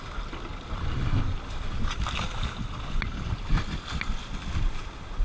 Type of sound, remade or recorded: recorded